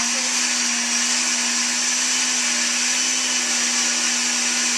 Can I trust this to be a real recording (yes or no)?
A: yes